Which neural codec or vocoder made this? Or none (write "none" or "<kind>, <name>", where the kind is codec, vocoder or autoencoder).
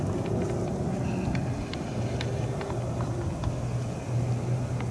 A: none